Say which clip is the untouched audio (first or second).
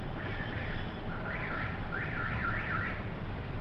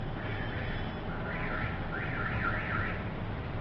second